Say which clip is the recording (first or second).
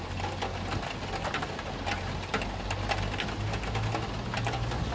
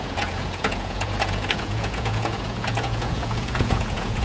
first